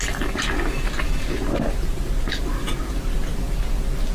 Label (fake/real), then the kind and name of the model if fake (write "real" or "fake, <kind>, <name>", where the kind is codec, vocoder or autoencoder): real